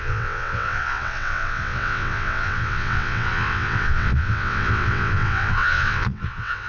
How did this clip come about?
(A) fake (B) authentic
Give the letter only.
A